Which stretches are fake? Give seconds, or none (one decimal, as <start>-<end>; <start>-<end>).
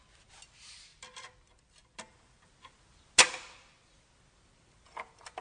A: none